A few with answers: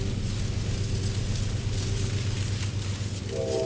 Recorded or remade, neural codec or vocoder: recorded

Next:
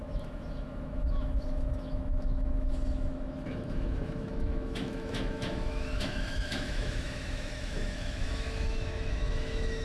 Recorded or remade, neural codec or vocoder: remade, autoencoder, DAC-VAE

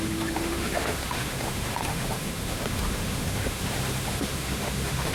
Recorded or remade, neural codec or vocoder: remade, autoencoder, DAC-VAE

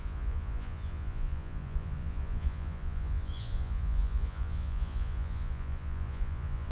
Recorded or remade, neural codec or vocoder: remade, vocoder, Vocos